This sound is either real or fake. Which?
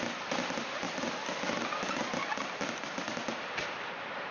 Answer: real